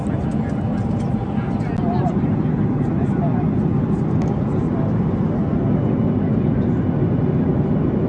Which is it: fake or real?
real